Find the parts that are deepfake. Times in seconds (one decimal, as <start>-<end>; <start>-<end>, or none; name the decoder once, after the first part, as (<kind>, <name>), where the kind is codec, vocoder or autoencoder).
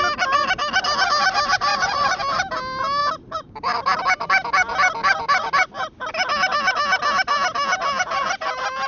1.7-2.2 (vocoder, Vocos)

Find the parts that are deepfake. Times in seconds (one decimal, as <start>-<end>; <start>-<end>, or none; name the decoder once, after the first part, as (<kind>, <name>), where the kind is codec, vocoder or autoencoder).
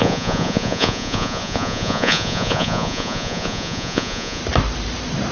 0.0-4.4 (vocoder, Vocos)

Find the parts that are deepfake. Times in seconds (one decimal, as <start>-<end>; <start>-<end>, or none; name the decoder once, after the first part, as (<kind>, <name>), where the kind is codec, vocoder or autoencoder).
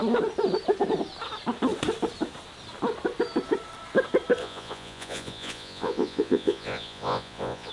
4.4-7.7 (vocoder, Vocos)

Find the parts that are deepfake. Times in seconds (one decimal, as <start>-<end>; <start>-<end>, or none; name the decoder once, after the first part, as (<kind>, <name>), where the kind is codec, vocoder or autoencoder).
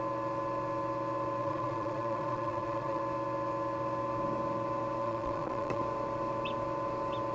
1.4-3.0 (vocoder, Vocos); 5.0-5.8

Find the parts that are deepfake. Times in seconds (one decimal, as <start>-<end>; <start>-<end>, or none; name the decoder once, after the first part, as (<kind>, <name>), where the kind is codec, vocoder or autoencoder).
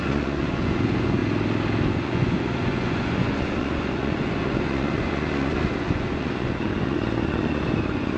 0.0-1.2 (vocoder, Vocos); 1.9-8.2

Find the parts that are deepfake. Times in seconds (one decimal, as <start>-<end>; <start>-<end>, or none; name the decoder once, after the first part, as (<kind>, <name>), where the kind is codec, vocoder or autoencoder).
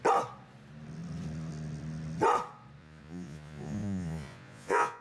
2.8-5.0 (vocoder, Vocos)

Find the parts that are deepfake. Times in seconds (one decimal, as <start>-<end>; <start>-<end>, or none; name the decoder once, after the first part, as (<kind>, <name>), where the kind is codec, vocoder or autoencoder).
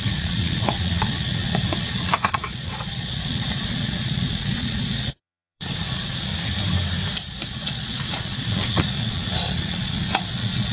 0.0-6.3 (vocoder, Vocos); 7.3-10.7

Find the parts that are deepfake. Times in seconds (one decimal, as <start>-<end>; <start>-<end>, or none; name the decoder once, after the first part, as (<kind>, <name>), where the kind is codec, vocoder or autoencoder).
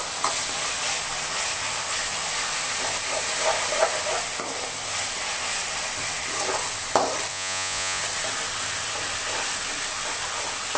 7.3-8.0 (vocoder, Vocos)